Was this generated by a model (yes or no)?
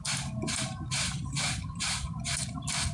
yes